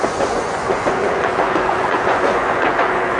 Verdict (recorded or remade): remade